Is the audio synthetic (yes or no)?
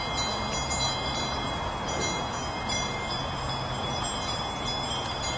no